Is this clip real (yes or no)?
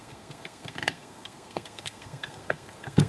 no